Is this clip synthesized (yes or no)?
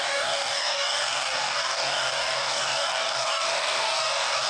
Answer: yes